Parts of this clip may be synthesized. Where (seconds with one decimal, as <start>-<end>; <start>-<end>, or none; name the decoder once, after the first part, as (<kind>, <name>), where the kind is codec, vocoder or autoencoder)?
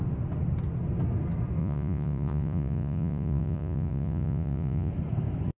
1.6-4.9 (vocoder, Vocos)